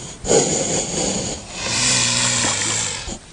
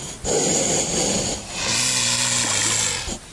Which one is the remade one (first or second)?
first